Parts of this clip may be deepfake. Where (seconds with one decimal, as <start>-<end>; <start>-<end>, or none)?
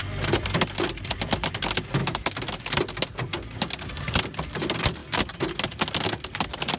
2.0-2.6